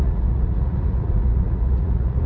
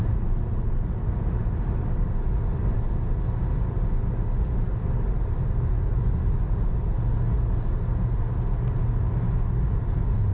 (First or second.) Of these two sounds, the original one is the second